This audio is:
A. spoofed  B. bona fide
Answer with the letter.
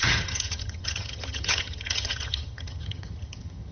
A